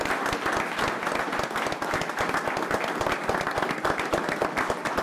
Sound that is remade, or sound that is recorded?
recorded